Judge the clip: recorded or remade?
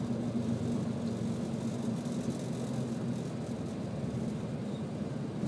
recorded